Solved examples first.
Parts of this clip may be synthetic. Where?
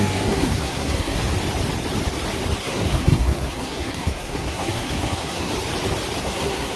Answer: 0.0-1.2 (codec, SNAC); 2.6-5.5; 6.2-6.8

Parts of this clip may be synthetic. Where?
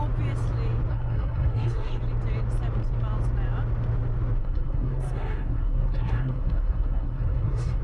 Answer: 0.9-2.0 (codec, SNAC); 4.4-7.8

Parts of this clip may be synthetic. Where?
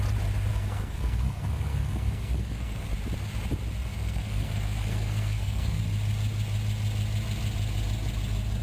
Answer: 0.5-2.9 (codec, SNAC); 3.9-5.8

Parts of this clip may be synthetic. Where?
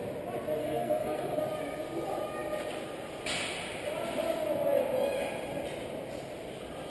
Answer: 0.6-1.4 (codec, SNAC)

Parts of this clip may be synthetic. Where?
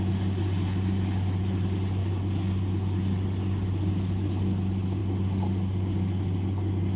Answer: none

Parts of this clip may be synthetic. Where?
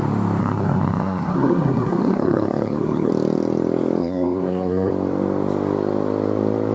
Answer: 0.4-3.1 (codec, SNAC); 4.0-4.9